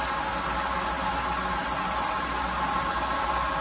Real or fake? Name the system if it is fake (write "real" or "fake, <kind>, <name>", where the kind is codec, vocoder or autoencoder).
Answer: real